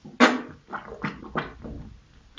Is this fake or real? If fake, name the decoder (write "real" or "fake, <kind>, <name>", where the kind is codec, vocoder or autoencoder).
real